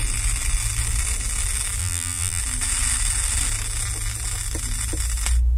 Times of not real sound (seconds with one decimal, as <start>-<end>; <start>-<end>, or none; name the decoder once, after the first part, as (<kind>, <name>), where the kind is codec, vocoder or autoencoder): 1.8-2.4 (vocoder, BigVGAN v2)